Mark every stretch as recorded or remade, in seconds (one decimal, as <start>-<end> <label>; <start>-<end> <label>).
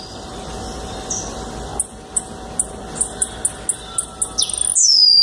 0.0-1.7 remade; 1.7-4.8 recorded; 4.8-5.2 remade